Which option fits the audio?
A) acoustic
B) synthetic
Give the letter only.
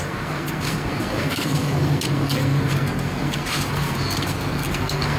B